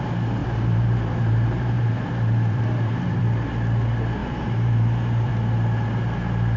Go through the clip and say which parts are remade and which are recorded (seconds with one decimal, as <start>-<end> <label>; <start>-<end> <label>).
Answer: 0.0-0.4 recorded; 0.4-3.2 remade; 3.2-4.2 recorded; 4.2-5.3 remade; 5.3-6.6 recorded